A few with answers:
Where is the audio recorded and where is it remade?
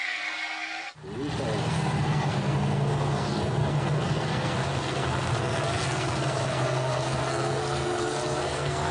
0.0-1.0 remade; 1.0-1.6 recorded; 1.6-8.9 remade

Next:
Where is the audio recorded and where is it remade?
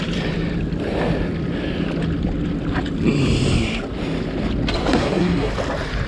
0.0-4.9 recorded; 4.9-5.5 remade; 5.5-6.1 recorded